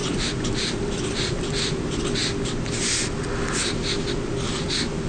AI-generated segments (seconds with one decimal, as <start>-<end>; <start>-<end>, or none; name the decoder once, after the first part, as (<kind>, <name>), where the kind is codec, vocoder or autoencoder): 0.0-2.2 (vocoder, BigVGAN v2); 4.5-5.1